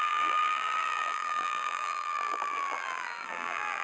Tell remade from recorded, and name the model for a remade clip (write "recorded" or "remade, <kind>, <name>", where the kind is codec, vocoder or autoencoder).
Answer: remade, vocoder, BigVGAN v2